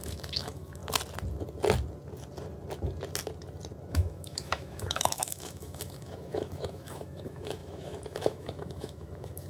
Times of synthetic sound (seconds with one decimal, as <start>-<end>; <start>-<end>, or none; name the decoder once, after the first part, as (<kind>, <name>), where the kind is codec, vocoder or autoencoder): 0.0-0.8 (autoencoder, DAC-VAE); 3.9-9.5